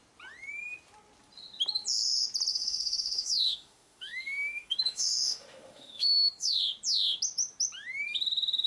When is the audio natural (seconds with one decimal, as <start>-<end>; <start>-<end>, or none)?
0.0-2.5; 6.6-8.7